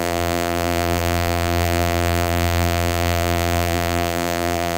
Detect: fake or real fake